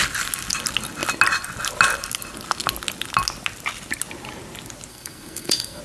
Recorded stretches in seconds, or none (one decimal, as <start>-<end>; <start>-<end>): 0.0-4.9